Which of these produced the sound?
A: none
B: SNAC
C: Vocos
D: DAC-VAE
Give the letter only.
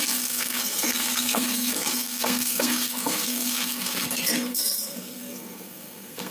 B